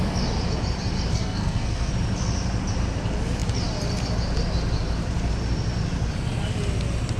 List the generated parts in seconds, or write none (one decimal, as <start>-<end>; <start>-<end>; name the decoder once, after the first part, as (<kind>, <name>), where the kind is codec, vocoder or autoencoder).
1.1-1.9 (codec, SNAC)